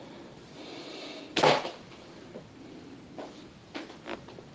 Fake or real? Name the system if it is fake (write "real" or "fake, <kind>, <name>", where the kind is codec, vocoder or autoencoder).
real